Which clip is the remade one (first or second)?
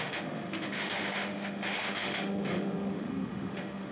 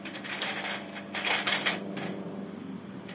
first